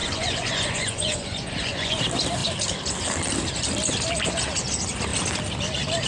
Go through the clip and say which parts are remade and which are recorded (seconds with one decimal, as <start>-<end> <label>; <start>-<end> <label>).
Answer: 0.0-2.0 remade; 2.0-6.1 recorded